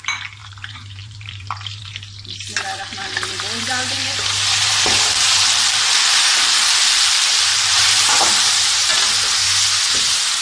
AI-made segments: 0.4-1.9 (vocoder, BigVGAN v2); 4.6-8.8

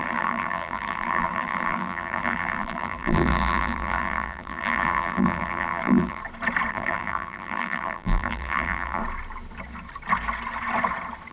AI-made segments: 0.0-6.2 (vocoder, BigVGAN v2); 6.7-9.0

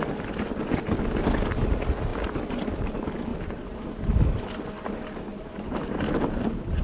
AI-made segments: 3.3-4.1 (vocoder, BigVGAN v2); 5.3-6.8

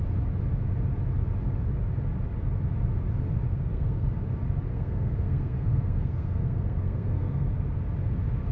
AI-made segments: 3.5-4.1 (codec, SNAC); 4.7-7.6

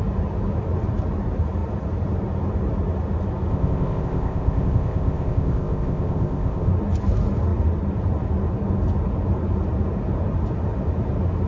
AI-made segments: 3.5-6.7 (codec, ZipCodec)

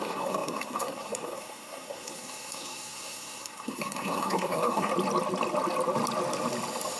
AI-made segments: 0.0-4.9 (codec, SNAC)

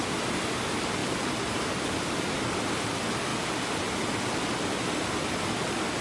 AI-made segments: none